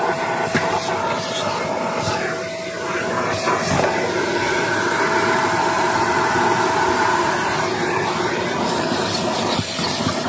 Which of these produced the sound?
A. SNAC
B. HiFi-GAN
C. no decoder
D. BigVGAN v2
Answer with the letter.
C